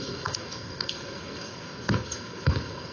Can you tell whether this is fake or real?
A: fake